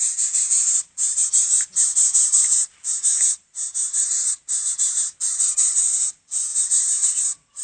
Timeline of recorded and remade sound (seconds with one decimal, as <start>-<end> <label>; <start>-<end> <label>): 0.0-7.6 recorded